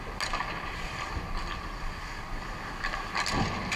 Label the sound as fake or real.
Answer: real